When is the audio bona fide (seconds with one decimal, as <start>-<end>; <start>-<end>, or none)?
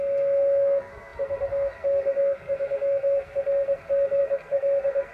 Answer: none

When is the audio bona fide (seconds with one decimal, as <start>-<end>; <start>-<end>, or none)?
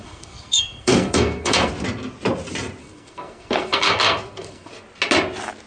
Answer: 1.7-2.8; 4.7-5.7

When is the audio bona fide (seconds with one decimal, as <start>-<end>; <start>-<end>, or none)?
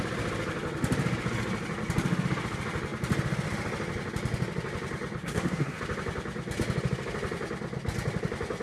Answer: 0.0-5.2; 5.8-8.6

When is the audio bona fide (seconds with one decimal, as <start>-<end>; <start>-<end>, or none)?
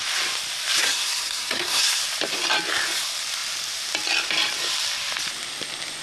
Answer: 0.0-0.8; 2.0-6.0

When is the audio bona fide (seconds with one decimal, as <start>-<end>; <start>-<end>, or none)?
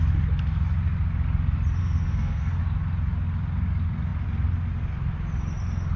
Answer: 0.0-1.8; 2.6-6.0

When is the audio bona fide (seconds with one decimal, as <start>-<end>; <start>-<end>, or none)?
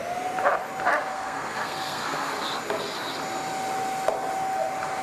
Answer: 0.0-1.1; 2.3-5.0